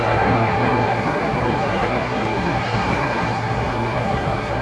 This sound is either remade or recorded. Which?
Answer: remade